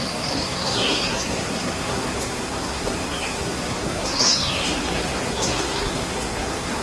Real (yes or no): no